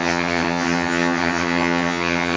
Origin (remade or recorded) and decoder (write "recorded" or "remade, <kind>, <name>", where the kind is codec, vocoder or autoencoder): remade, vocoder, HiFi-GAN